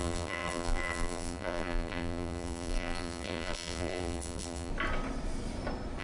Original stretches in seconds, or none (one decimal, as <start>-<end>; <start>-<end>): 4.7-6.0